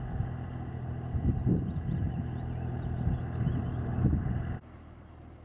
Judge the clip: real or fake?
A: real